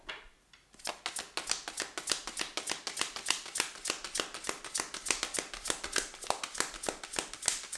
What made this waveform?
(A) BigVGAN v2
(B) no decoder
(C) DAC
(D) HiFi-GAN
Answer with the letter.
B